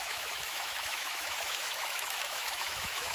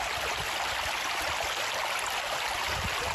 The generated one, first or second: first